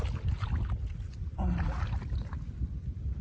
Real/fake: real